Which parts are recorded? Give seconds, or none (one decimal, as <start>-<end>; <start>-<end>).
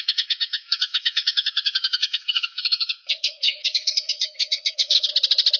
5.1-5.6